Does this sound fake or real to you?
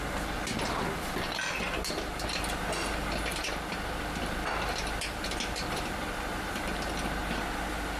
real